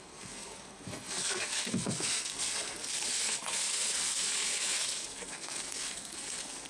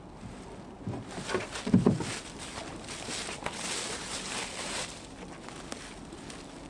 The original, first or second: second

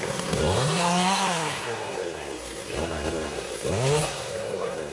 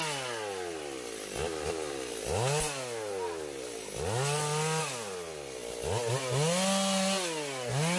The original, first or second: second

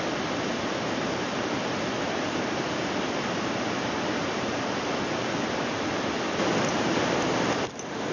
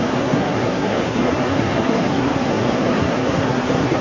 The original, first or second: first